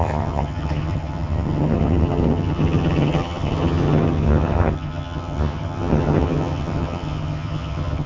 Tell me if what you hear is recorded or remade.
remade